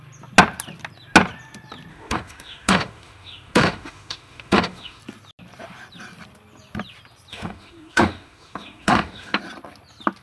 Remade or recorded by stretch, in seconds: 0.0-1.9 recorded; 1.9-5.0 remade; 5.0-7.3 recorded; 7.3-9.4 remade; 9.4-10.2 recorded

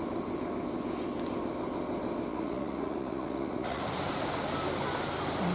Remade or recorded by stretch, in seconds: 0.0-2.3 recorded; 2.3-3.8 remade; 3.8-5.5 recorded

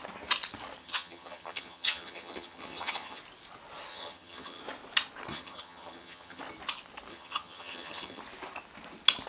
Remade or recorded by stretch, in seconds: 0.0-0.8 recorded; 0.8-3.2 remade; 3.2-3.9 recorded; 3.9-4.6 remade; 4.6-5.3 recorded; 5.3-6.4 remade; 6.4-7.1 recorded; 7.1-8.2 remade; 8.2-9.3 recorded